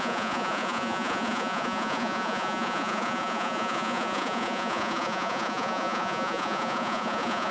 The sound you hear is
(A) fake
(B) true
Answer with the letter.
A